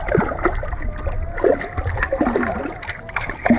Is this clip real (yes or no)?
yes